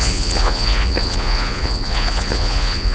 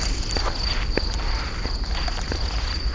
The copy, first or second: first